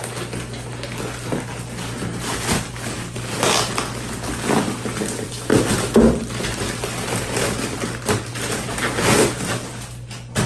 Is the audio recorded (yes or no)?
yes